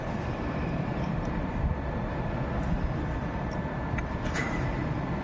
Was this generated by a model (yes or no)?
yes